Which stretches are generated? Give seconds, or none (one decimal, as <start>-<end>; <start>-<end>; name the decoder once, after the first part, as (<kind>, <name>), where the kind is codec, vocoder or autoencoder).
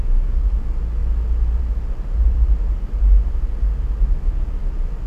none